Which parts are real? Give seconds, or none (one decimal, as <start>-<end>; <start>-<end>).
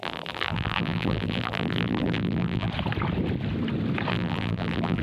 2.7-4.1